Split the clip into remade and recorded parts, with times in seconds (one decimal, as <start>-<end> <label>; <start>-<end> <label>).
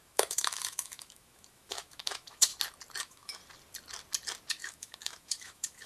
0.0-2.5 remade; 2.5-3.0 recorded; 3.0-3.4 remade; 3.4-4.5 recorded; 4.5-5.9 remade